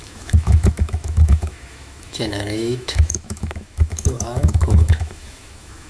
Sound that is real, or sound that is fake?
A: fake